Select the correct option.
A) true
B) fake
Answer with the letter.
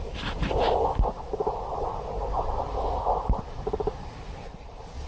A